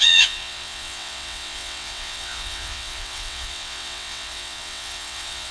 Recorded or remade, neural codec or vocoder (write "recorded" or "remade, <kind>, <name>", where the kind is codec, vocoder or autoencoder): remade, vocoder, WaveNeXt